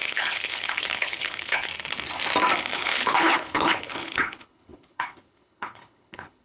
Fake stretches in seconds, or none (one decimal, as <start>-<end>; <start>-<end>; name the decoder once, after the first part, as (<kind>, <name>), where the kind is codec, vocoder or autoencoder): 0.0-1.7 (codec, HILCodec); 2.7-6.4